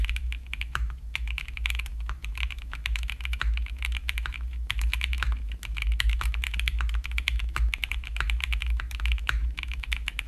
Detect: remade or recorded remade